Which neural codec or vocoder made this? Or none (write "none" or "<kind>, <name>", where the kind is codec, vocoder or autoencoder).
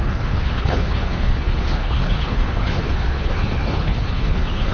codec, HILCodec